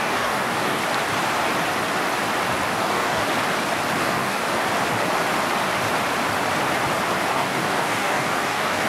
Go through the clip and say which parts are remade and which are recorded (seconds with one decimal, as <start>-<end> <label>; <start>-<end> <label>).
0.0-0.8 remade; 0.8-2.8 recorded; 2.8-3.2 remade; 3.2-4.0 recorded; 4.0-4.4 remade; 4.4-7.3 recorded; 7.3-8.9 remade